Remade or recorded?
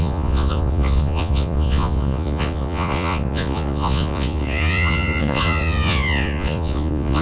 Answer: remade